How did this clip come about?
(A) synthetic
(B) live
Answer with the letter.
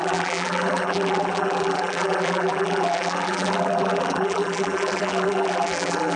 A